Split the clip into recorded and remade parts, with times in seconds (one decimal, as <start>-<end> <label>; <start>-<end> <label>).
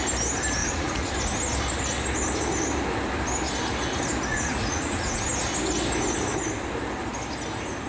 0.0-0.6 recorded; 0.6-1.1 remade; 1.1-4.3 recorded; 4.3-5.2 remade; 5.2-7.9 recorded